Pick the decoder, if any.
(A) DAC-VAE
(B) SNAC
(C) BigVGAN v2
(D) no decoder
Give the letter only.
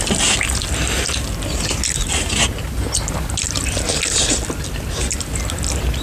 D